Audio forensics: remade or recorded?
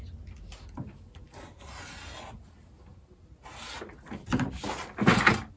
recorded